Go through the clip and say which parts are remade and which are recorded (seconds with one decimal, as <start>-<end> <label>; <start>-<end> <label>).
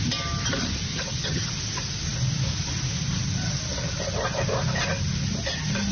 0.0-0.9 recorded; 0.9-1.5 remade; 1.5-5.9 recorded